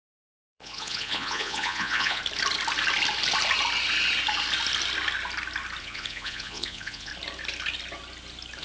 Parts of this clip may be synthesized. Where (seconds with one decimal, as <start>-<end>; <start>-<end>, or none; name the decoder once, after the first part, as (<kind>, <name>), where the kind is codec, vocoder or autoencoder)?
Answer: 0.0-2.2 (vocoder, Vocos); 5.8-7.1